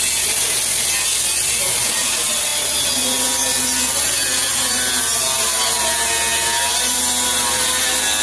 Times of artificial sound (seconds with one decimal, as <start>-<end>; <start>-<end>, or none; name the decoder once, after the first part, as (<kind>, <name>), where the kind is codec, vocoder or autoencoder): none